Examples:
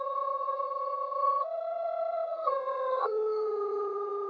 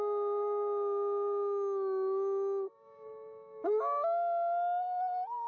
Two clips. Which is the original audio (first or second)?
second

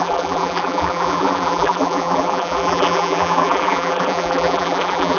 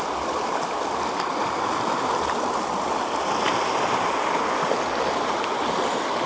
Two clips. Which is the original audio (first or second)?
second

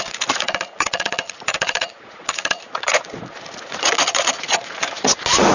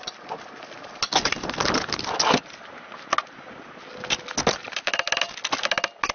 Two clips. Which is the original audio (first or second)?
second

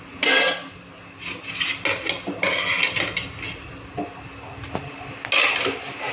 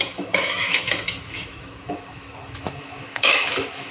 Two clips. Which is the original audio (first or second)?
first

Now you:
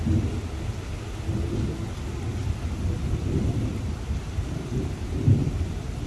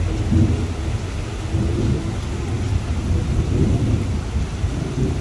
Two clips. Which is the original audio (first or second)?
second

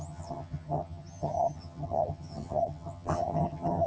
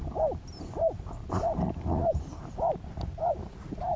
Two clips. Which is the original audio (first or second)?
second